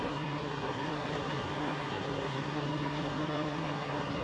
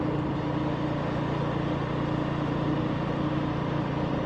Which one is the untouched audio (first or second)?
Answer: second